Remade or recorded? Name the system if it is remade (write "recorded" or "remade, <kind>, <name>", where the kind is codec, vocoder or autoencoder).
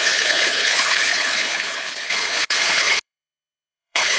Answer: remade, codec, HILCodec